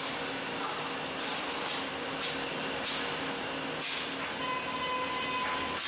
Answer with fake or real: real